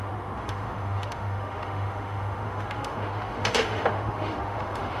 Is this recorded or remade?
remade